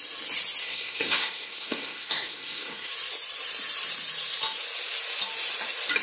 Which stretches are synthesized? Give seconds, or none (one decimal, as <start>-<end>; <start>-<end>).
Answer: 0.6-2.9